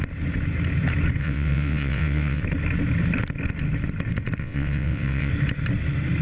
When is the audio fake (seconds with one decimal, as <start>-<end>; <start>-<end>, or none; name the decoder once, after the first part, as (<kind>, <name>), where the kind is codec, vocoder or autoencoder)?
1.2-2.4 (vocoder, WaveNeXt); 4.4-5.3